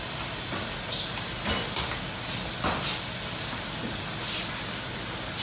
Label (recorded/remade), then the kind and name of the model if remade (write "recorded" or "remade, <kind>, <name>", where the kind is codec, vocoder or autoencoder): recorded